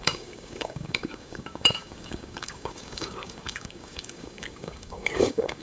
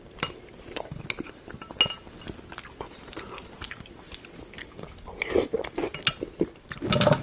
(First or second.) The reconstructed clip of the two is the first